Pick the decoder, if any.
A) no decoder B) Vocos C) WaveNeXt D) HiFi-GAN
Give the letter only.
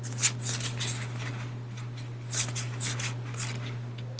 A